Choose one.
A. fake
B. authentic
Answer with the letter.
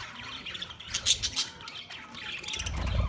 B